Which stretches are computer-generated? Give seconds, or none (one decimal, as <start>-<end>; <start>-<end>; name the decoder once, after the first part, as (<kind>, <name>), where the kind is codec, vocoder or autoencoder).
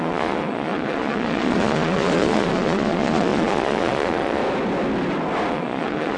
0.0-4.4 (vocoder, Vocos); 5.5-6.2